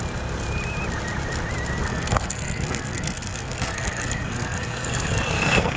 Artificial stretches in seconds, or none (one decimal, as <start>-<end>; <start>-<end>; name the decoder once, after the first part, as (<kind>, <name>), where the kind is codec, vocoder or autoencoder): 1.9-5.8 (codec, SNAC)